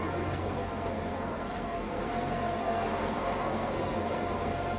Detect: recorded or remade remade